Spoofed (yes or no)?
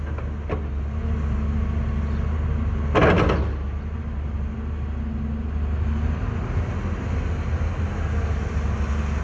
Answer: no